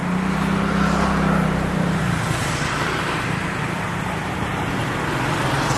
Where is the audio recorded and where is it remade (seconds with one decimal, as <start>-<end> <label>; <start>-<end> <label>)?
0.0-1.4 recorded; 1.4-4.9 remade; 4.9-5.8 recorded